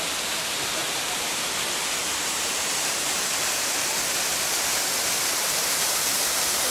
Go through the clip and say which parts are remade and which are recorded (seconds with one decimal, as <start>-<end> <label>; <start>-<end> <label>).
0.0-0.8 recorded; 0.8-1.4 remade; 1.4-2.0 recorded; 2.0-3.3 remade; 3.3-6.7 recorded